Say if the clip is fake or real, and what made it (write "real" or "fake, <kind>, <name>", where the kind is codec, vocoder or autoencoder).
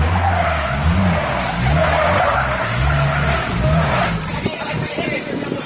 real